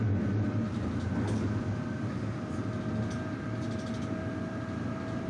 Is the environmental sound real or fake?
real